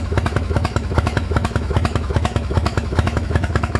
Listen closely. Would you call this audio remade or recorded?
remade